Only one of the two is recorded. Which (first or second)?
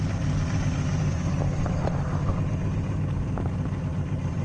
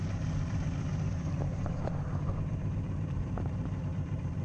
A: first